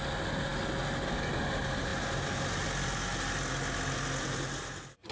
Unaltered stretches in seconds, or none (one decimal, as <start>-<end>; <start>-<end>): 0.0-5.1